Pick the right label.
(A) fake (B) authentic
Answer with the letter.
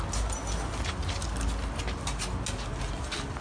B